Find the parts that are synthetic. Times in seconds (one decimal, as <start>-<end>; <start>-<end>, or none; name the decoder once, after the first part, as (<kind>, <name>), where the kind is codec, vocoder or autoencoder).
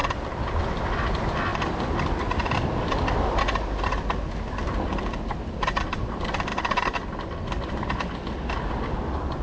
none